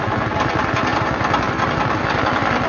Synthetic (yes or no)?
no